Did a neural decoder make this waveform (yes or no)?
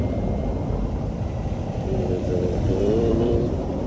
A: yes